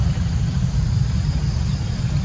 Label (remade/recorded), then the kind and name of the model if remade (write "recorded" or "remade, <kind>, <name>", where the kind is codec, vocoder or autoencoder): recorded